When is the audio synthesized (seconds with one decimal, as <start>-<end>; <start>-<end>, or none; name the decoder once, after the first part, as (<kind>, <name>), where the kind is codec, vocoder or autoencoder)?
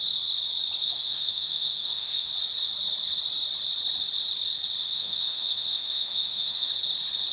0.8-2.3 (autoencoder, DAC-VAE); 4.8-6.7